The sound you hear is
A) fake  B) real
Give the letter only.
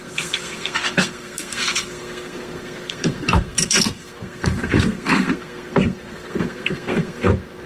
A